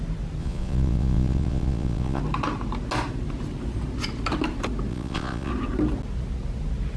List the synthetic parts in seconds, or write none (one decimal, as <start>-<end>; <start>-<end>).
0.4-2.2; 4.9-5.5

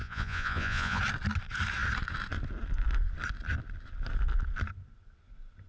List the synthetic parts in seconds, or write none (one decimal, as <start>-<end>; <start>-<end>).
0.0-1.0

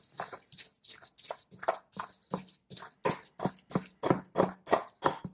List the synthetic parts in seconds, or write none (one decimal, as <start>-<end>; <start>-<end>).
none

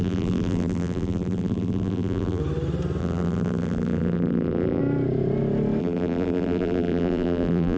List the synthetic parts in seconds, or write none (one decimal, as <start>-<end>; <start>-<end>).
0.0-2.4; 3.0-4.8; 5.8-7.8

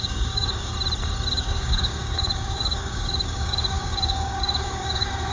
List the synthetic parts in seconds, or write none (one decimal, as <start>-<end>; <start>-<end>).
0.0-0.7; 1.3-5.3

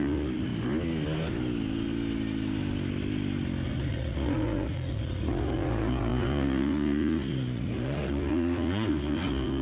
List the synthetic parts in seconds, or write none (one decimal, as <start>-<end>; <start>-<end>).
0.0-0.5; 3.7-9.6

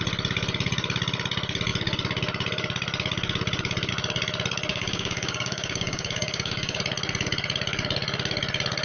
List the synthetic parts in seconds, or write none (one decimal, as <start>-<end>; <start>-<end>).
4.7-6.8